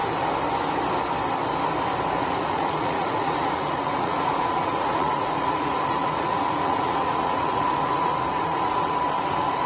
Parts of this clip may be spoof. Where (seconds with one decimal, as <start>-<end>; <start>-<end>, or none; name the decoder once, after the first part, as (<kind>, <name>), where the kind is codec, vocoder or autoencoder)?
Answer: 2.2-9.7 (vocoder, Vocos)